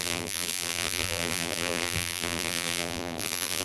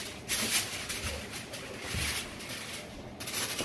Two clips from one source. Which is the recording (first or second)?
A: second